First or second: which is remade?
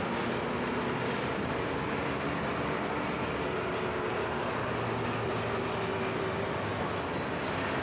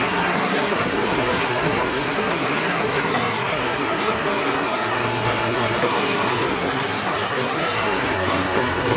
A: second